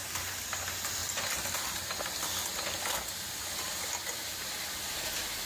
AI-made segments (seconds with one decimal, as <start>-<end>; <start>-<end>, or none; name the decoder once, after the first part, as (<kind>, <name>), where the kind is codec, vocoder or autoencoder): none